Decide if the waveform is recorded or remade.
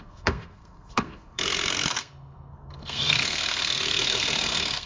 remade